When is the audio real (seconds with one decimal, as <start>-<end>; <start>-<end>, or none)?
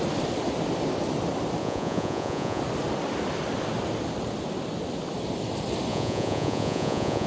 0.0-1.6; 2.6-5.9